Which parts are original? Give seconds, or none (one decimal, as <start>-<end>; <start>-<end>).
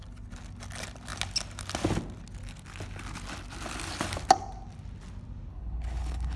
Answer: 0.0-5.5